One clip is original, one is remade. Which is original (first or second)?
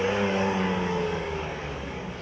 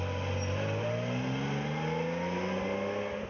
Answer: second